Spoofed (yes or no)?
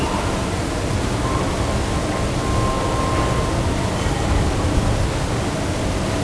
no